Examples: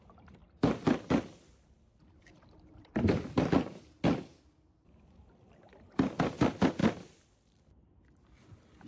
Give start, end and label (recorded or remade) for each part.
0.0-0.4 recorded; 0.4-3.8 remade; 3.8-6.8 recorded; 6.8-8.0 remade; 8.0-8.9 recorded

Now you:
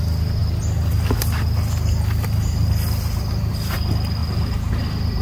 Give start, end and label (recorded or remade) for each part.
0.0-5.2 recorded

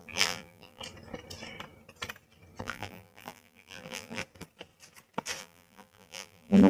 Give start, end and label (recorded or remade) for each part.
0.0-0.8 remade; 0.8-2.6 recorded; 2.6-4.2 remade; 4.2-5.4 recorded; 5.4-6.7 remade

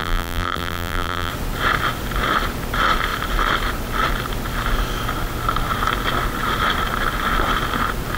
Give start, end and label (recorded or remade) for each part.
0.0-1.3 remade; 1.3-8.2 recorded

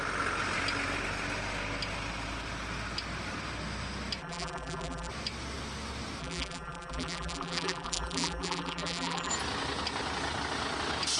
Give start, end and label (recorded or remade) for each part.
0.0-4.2 recorded; 4.2-5.1 remade; 5.1-6.2 recorded; 6.2-9.3 remade; 9.3-11.2 recorded

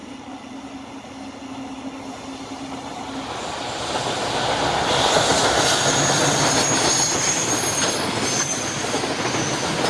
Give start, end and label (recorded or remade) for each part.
0.0-9.9 recorded

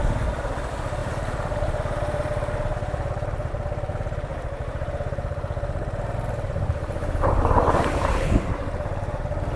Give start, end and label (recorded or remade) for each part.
0.0-1.0 recorded; 1.0-3.5 remade; 3.5-4.3 recorded; 4.3-9.2 remade; 9.2-9.6 recorded

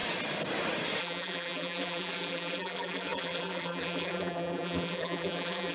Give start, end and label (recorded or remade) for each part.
0.0-1.0 recorded; 1.0-5.7 remade